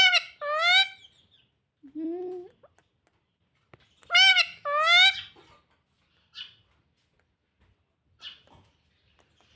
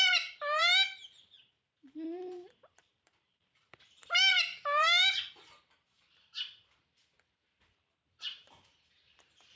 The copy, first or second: second